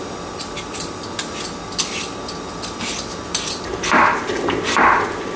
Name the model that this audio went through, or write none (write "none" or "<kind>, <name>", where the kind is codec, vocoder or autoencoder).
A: none